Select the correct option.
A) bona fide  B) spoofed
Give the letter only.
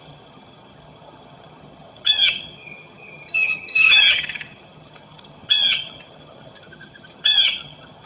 B